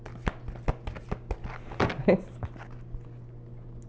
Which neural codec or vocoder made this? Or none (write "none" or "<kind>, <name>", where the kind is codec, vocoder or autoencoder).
none